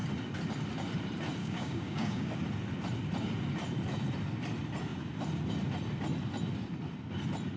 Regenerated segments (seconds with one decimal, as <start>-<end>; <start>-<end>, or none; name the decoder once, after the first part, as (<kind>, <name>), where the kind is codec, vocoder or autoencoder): 1.4-2.3 (codec, DAC)